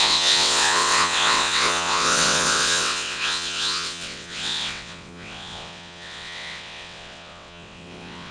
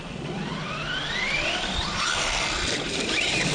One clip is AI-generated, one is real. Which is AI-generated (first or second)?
first